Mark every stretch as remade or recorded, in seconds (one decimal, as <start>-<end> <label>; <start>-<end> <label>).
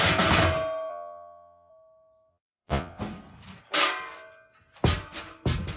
0.0-0.9 recorded; 0.9-1.7 remade; 1.7-2.3 recorded; 2.3-3.0 remade; 3.0-5.8 recorded